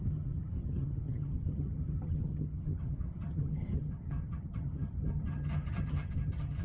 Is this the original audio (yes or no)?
no